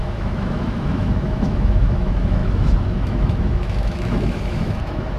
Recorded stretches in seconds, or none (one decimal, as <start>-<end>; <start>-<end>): none